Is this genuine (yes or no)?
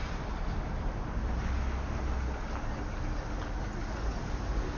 yes